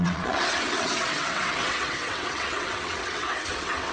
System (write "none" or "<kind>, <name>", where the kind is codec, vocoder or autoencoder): vocoder, WaveNeXt